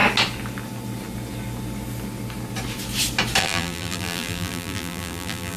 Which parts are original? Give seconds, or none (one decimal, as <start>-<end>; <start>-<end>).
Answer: 0.0-3.4